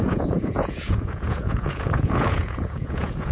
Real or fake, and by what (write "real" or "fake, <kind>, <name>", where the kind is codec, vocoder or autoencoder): fake, vocoder, Vocos